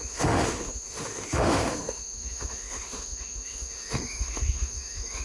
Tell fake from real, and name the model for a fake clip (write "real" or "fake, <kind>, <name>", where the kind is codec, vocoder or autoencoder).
fake, autoencoder, DAC-VAE